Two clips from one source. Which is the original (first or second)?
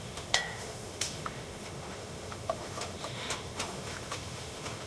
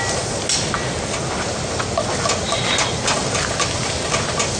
second